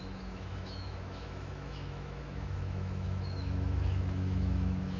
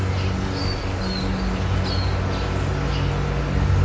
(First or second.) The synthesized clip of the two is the first